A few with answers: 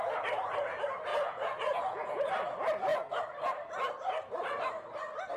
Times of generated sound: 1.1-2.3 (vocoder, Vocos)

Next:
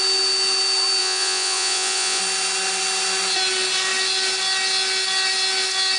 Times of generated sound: 1.0-2.2 (vocoder, Vocos)